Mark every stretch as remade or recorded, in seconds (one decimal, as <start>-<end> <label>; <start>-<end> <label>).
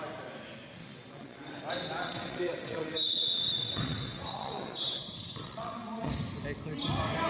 0.0-0.8 recorded; 0.8-1.6 remade; 1.6-2.0 recorded; 2.0-6.1 remade; 6.1-7.3 recorded